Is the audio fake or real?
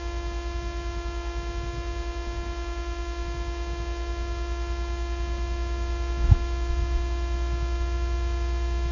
real